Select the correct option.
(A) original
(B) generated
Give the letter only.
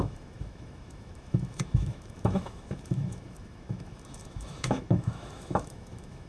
B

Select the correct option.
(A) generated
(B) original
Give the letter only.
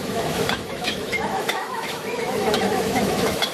A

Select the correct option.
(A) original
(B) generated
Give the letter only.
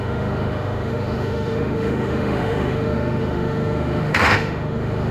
B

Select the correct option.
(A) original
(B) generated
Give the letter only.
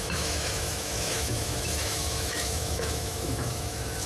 B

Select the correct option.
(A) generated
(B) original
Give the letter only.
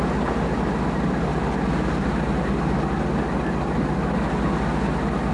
B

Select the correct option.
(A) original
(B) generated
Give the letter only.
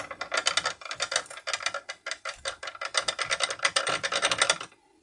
A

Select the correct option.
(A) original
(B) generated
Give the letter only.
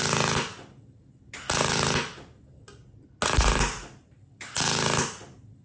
A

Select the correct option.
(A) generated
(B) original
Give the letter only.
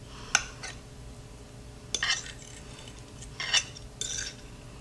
B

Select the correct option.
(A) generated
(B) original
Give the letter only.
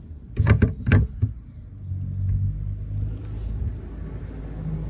B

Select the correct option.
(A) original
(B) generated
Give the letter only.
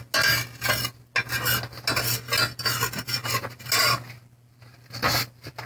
A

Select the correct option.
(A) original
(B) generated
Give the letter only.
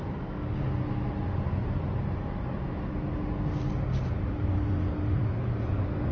A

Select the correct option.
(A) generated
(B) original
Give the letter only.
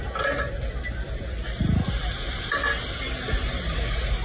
B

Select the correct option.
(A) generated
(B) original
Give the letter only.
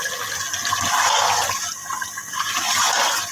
B